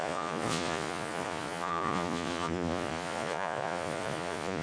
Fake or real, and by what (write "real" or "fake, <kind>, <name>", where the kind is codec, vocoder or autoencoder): fake, vocoder, Vocos